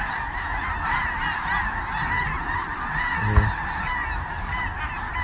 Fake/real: real